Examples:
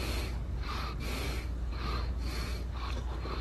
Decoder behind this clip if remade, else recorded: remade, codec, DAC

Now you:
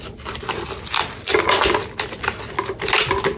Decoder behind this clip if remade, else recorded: recorded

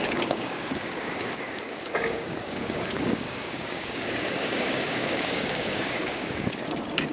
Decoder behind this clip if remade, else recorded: remade, codec, DAC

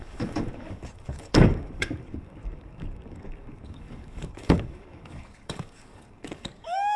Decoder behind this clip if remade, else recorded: remade, codec, DAC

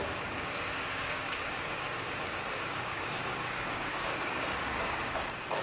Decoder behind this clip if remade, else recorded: remade, codec, DAC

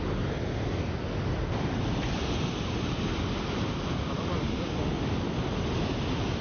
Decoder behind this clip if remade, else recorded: recorded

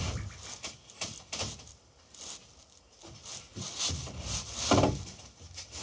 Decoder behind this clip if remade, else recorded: recorded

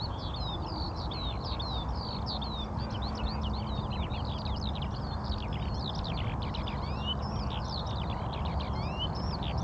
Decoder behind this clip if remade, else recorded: recorded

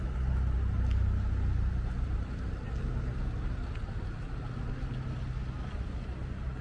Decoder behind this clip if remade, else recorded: recorded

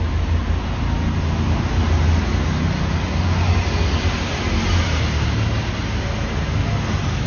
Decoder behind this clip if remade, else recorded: recorded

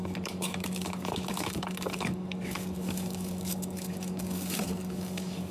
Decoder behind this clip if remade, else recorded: remade, codec, DAC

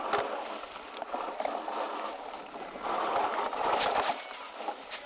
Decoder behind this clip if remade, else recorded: recorded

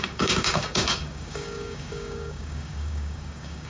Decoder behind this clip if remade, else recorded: remade, codec, DAC